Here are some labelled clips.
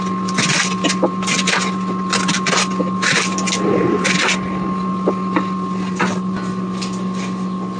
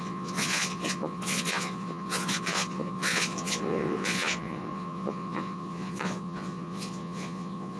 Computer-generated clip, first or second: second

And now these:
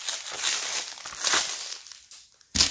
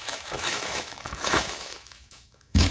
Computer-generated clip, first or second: second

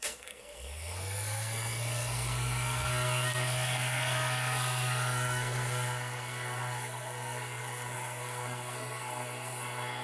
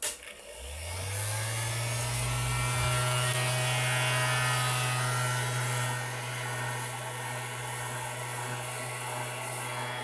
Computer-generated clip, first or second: first